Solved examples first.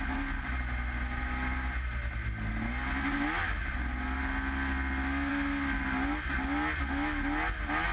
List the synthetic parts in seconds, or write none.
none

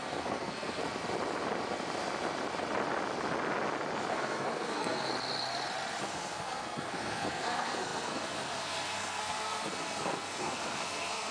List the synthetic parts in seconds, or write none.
0.0-0.8; 4.1-5.1; 6.0-11.3